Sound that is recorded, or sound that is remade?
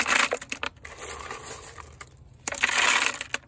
recorded